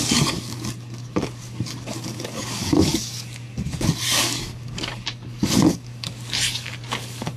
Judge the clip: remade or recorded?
remade